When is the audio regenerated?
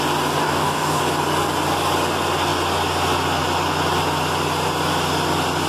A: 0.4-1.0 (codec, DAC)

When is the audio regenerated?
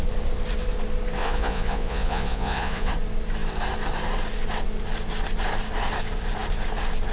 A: 1.2-2.9 (vocoder, Vocos)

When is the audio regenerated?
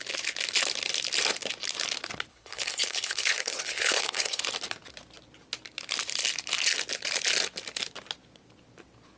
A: 2.3-4.4 (codec, HILCodec)